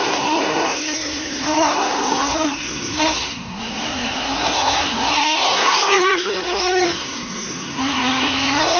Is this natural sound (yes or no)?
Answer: no